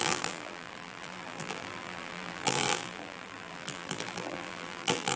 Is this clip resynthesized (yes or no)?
yes